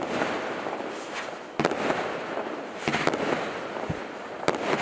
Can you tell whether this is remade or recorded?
recorded